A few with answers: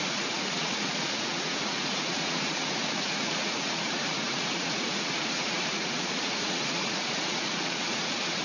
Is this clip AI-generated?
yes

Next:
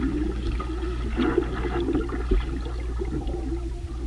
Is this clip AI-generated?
no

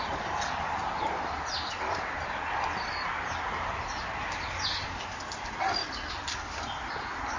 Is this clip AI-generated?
no